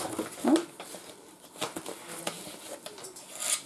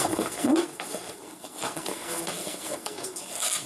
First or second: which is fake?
second